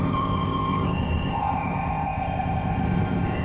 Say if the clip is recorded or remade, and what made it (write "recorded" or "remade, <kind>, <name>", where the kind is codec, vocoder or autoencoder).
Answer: remade, codec, ZipCodec